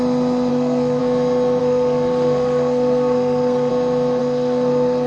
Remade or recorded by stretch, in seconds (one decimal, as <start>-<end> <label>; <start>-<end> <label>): 0.0-0.5 recorded; 0.5-1.0 remade; 1.0-1.6 recorded; 1.6-3.7 remade; 3.7-4.2 recorded; 4.2-5.1 remade